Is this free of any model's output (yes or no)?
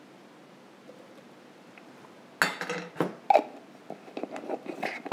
yes